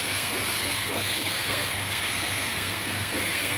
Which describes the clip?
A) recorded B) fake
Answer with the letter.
B